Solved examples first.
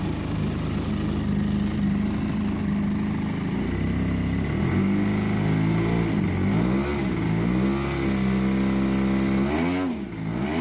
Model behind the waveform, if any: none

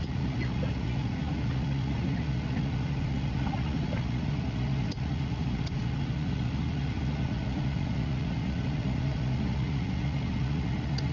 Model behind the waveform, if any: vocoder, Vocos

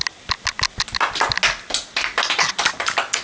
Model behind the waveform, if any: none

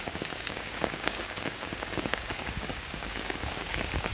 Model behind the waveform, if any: codec, DAC